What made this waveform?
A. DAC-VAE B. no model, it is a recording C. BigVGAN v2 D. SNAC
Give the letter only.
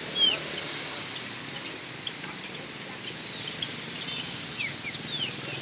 B